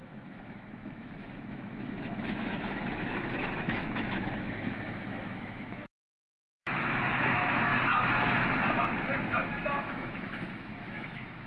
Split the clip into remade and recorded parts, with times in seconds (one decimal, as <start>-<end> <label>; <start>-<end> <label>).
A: 0.0-7.7 remade; 7.7-9.8 recorded; 9.8-11.5 remade

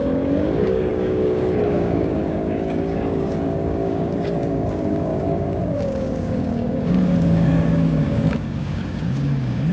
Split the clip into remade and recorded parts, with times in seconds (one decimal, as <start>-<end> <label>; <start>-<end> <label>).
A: 0.0-9.7 remade

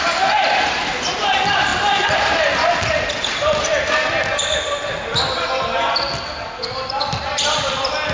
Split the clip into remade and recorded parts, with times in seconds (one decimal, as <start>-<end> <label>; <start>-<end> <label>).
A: 0.0-8.1 recorded

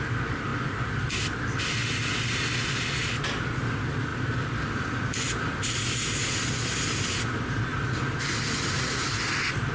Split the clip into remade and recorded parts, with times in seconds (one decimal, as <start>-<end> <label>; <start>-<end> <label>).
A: 0.0-9.7 recorded